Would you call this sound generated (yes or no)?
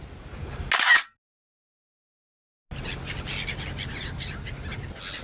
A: no